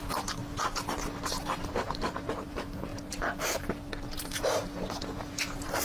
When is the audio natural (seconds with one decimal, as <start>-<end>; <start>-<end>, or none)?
0.4-1.2; 2.9-4.1; 4.6-5.1